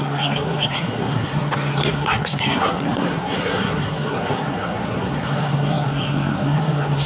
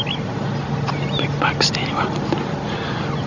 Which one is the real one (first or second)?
second